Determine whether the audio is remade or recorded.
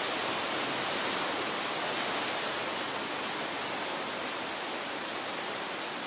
recorded